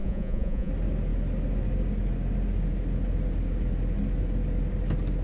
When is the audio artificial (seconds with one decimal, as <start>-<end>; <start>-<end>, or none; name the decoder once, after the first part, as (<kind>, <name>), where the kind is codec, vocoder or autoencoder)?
0.0-0.7 (vocoder, Vocos)